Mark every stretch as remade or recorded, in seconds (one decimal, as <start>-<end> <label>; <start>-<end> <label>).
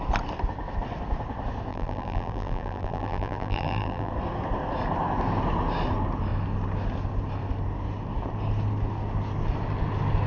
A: 0.0-1.7 recorded; 1.7-4.1 remade; 4.1-10.3 recorded